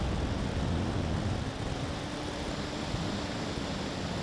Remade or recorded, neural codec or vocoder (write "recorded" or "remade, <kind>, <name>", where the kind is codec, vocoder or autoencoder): recorded